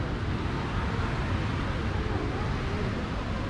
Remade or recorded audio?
recorded